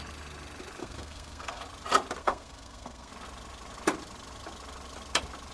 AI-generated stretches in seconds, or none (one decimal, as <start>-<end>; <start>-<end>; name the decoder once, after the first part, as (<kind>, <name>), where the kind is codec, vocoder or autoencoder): 0.8-1.6 (codec, SNAC); 2.2-3.1